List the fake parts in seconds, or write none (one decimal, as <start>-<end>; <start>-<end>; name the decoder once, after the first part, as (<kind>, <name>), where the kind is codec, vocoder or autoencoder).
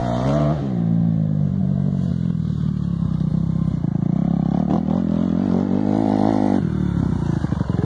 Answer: 0.0-0.6 (vocoder, Vocos); 1.6-2.1